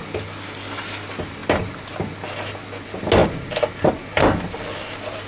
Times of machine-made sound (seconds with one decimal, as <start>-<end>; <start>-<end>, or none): none